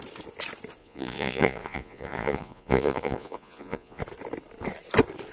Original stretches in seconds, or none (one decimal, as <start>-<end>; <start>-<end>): 0.0-0.8; 4.0-5.3